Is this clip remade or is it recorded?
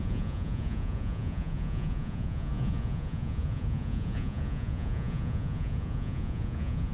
remade